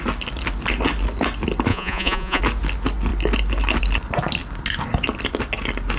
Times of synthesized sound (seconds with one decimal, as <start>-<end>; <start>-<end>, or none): 1.7-2.4